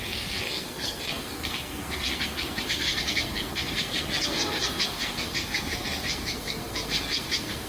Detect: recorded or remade remade